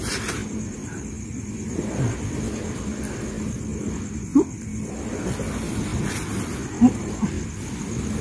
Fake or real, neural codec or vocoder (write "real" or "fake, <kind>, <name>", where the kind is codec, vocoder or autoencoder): real